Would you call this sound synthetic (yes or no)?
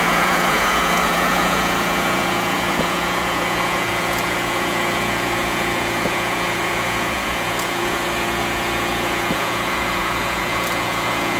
yes